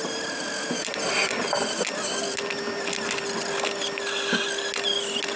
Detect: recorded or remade recorded